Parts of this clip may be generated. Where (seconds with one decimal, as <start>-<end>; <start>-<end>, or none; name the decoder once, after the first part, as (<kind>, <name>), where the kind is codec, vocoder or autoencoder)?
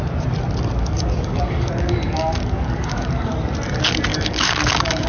0.8-3.3 (codec, DAC); 4.1-5.1